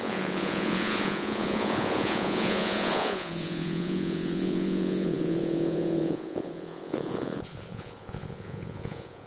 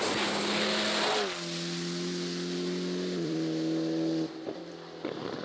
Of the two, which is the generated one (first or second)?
first